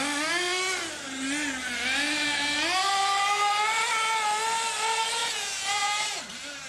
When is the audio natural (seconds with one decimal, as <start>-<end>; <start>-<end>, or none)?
0.0-5.2; 6.2-6.7